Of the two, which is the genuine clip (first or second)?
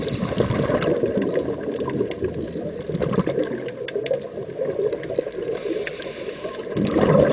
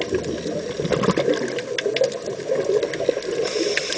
second